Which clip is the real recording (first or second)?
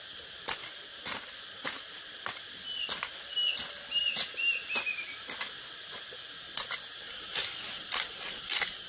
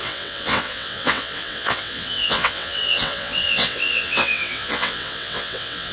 first